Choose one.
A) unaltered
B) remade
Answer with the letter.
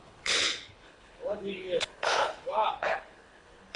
B